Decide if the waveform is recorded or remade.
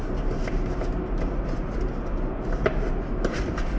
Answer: recorded